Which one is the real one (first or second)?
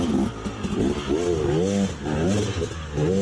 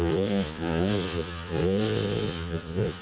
first